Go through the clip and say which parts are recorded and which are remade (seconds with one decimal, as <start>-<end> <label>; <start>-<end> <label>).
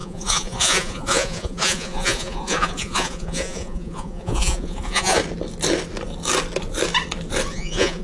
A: 0.0-5.2 remade; 5.2-7.5 recorded; 7.5-8.0 remade